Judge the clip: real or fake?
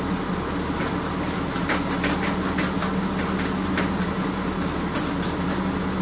real